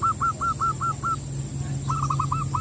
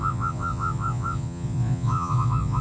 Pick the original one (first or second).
first